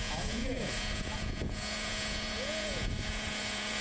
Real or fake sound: fake